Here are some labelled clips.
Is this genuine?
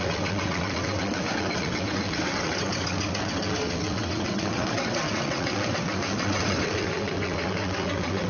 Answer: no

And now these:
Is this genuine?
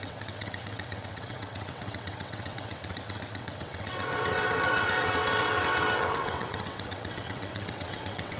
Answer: no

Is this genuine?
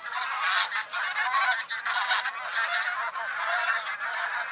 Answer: yes